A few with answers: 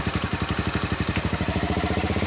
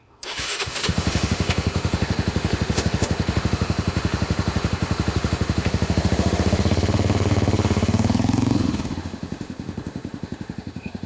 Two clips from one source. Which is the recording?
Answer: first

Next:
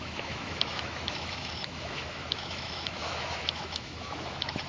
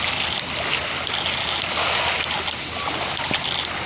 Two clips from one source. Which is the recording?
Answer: second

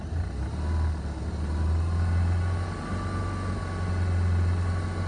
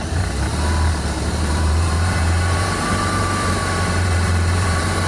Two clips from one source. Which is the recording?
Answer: first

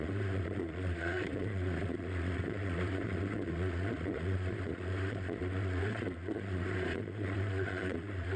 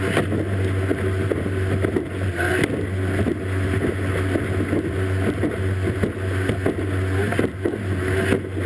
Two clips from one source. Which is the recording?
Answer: second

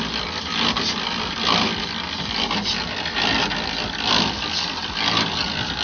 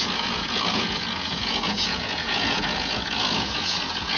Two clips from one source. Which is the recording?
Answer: first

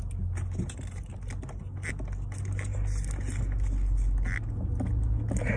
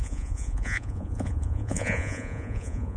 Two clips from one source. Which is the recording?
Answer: first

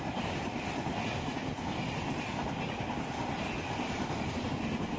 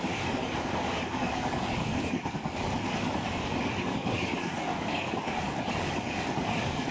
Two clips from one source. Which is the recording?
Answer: first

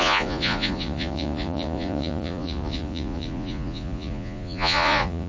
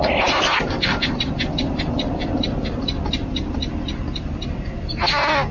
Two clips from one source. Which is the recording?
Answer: second